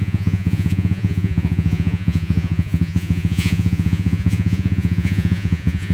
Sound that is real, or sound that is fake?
fake